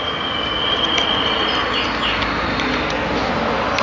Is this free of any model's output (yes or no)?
yes